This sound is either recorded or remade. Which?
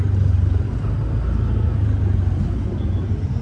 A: recorded